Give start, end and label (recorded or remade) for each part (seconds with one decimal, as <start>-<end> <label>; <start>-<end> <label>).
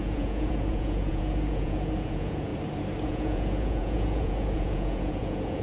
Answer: 0.0-2.5 remade; 2.5-3.0 recorded; 3.0-5.6 remade